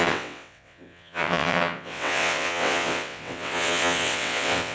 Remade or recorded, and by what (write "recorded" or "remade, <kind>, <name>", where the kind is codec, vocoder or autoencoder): remade, vocoder, WaveNeXt